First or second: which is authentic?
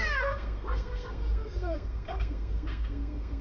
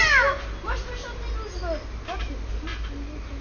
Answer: second